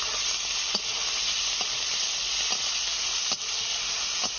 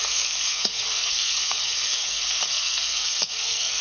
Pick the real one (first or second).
first